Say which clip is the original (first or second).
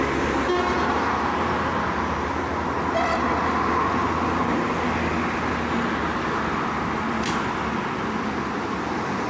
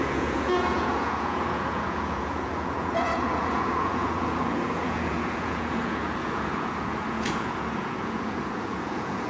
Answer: first